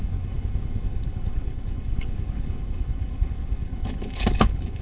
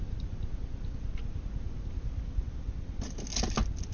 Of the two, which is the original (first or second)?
second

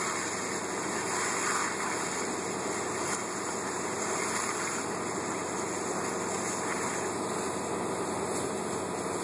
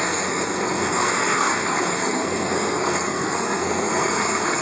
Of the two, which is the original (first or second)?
first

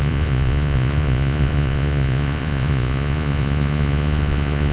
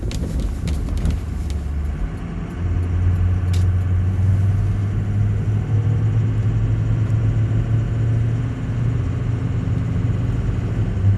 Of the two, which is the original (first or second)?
second